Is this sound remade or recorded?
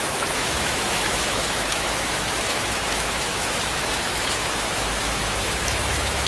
remade